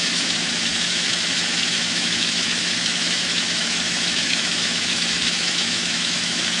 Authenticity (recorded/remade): remade